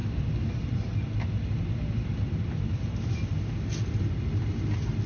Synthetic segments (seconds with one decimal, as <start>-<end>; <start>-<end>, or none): none